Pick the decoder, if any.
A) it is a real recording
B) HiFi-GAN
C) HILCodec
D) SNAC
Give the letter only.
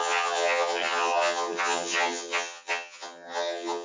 B